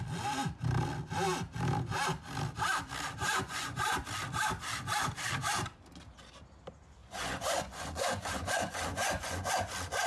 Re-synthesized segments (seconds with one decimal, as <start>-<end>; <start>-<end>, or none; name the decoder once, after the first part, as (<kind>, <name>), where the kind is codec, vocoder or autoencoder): 3.2-4.0 (vocoder, Vocos); 7.0-9.5